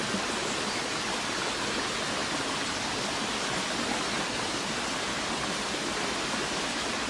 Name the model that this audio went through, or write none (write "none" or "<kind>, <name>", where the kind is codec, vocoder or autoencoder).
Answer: none